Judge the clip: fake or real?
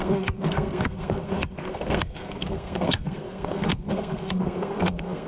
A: fake